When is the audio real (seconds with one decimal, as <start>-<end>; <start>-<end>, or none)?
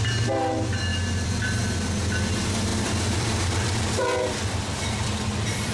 0.0-0.9; 1.4-2.7